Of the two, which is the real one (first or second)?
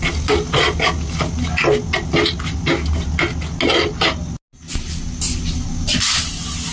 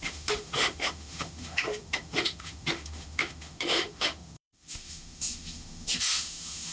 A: first